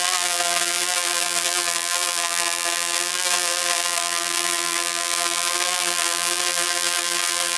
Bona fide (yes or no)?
no